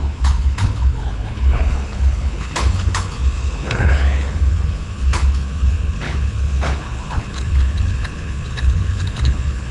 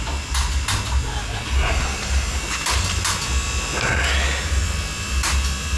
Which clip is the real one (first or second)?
second